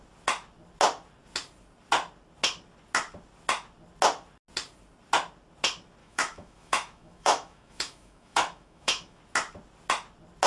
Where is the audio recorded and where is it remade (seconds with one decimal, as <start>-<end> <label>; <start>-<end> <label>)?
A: 0.0-6.0 recorded; 6.0-9.2 remade; 9.2-10.5 recorded

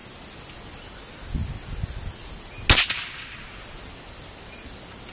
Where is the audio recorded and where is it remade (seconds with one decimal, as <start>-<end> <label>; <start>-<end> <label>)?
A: 0.0-5.1 recorded